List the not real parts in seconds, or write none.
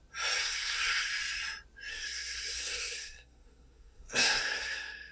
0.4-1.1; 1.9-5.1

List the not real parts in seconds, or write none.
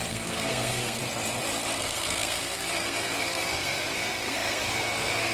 0.0-1.0; 1.8-5.3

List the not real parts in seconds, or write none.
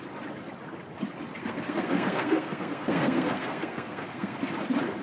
1.4-4.4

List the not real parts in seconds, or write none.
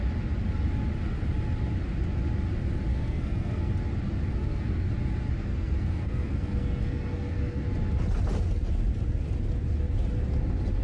2.9-3.7; 4.3-4.9; 5.5-7.6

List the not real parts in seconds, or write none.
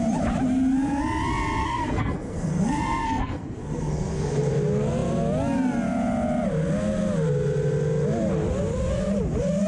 1.6-4.5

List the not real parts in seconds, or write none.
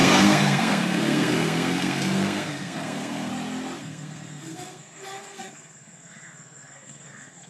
0.0-3.3; 3.8-7.5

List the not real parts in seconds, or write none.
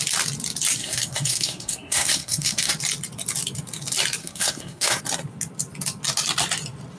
0.8-2.7; 4.2-5.0